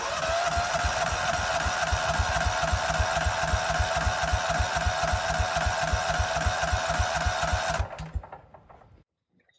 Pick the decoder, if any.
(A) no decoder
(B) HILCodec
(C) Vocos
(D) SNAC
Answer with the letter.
A